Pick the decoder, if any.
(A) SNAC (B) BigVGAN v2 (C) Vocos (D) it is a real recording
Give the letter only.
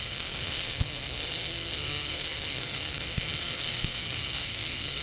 A